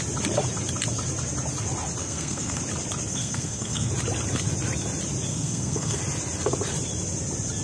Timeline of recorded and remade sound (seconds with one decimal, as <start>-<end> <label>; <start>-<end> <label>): 0.0-2.0 recorded; 2.0-2.6 remade; 2.6-3.1 recorded; 3.1-3.9 remade; 3.9-5.3 recorded; 5.3-6.0 remade; 6.0-7.6 recorded